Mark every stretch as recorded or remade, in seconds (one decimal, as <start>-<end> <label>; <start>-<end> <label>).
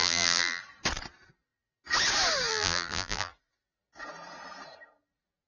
0.0-0.6 remade; 0.6-2.5 recorded; 2.5-3.3 remade; 3.3-5.5 recorded